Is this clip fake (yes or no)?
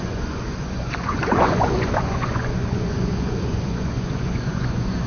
yes